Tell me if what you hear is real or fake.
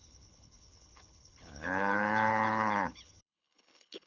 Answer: fake